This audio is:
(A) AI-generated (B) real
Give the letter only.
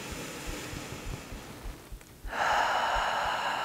B